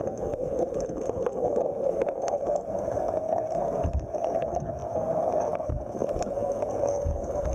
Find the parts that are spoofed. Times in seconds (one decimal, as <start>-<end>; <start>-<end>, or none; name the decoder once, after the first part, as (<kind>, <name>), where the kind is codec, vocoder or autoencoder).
0.0-7.5 (codec, SNAC)